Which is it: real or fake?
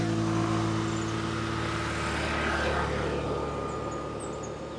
real